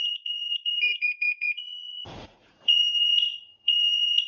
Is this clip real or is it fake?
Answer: fake